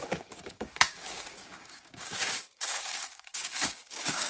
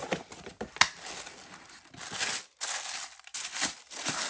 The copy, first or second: first